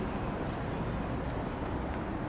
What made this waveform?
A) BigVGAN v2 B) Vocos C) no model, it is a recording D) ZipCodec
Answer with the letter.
C